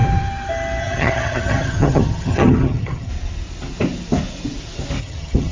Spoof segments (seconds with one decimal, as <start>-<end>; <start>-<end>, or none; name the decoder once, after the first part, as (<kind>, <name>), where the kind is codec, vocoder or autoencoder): 0.8-3.1 (vocoder, HiFi-GAN); 5.0-5.5